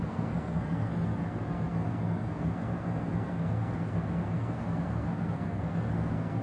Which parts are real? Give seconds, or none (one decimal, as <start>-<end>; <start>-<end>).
none